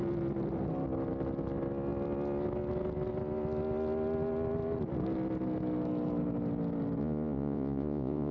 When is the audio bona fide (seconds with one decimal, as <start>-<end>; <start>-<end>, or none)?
0.0-7.0